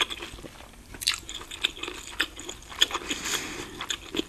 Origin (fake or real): real